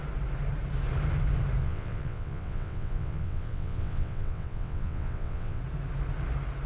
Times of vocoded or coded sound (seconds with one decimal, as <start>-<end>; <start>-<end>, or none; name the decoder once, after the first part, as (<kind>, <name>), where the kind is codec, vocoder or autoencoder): 1.6-5.6 (vocoder, WaveNeXt)